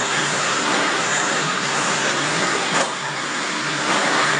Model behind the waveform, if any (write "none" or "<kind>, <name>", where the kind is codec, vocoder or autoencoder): codec, SNAC